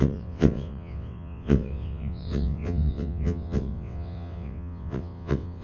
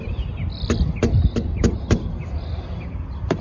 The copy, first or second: first